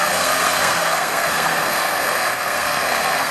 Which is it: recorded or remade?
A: remade